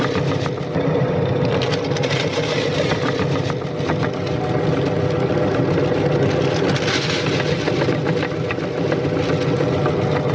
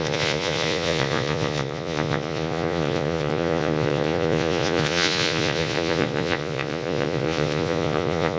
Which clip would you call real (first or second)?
first